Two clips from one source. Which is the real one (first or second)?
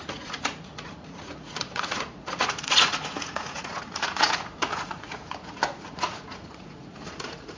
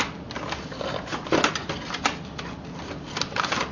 second